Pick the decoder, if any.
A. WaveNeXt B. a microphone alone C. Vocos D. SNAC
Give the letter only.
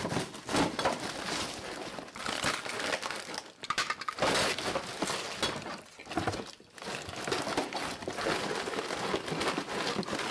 B